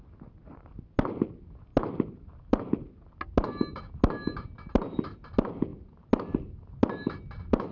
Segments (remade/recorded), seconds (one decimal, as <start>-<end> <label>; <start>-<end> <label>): 0.0-7.7 recorded

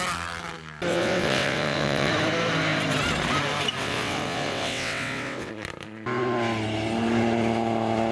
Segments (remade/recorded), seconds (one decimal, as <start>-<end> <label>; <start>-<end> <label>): 0.0-0.9 recorded; 0.9-2.1 remade; 2.1-3.8 recorded; 3.8-5.5 remade; 5.5-8.1 recorded

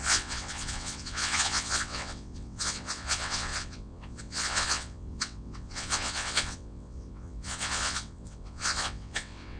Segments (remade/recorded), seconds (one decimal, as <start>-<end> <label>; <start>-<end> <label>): 0.0-9.6 remade

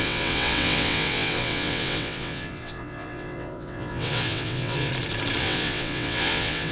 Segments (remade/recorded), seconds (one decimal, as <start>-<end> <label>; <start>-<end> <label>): 0.0-4.9 remade; 4.9-5.4 recorded; 5.4-6.7 remade

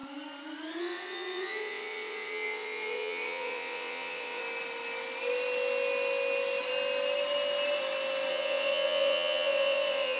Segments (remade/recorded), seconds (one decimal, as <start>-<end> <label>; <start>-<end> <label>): 0.0-0.8 recorded; 0.8-4.4 remade; 4.4-8.3 recorded; 8.3-10.2 remade

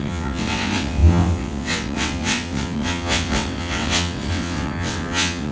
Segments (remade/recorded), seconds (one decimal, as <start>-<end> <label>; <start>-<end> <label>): 0.0-5.5 remade